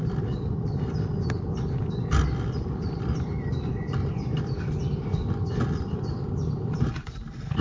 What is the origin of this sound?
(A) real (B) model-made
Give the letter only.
A